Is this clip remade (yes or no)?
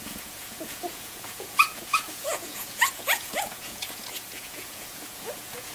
yes